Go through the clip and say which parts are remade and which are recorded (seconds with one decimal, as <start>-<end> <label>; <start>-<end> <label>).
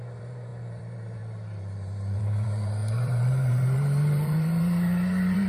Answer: 0.0-5.5 remade